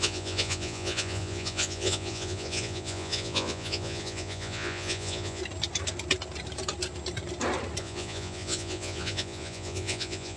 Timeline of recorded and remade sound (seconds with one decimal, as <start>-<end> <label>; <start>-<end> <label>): 0.0-5.4 remade; 5.4-7.8 recorded; 7.8-10.4 remade